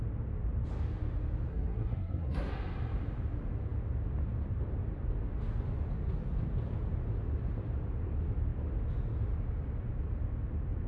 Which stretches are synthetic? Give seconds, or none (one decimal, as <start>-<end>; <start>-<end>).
1.5-2.5